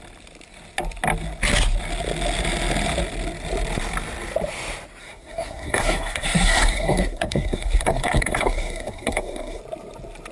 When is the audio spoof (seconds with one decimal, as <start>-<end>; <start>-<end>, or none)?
5.0-9.6